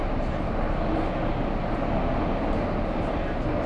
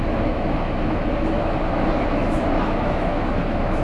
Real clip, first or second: first